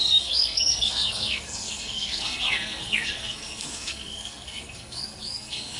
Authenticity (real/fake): fake